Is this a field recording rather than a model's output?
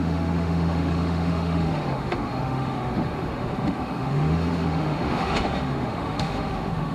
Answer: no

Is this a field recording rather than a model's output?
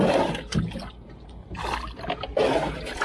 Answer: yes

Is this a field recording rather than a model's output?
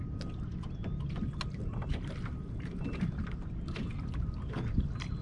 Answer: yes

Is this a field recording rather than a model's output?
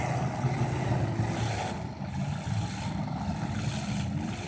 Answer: yes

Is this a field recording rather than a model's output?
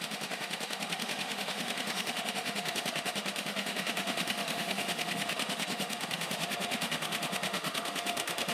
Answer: no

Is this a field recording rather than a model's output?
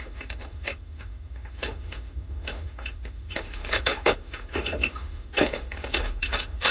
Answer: no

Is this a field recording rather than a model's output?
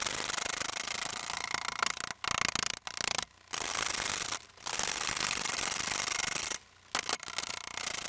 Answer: yes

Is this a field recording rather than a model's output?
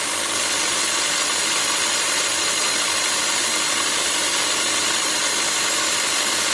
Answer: yes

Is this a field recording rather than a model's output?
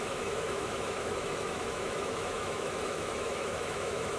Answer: no